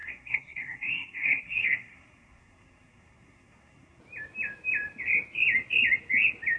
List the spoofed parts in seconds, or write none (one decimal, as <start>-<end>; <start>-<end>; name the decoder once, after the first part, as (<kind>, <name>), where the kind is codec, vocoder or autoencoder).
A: 0.0-4.0 (codec, SNAC)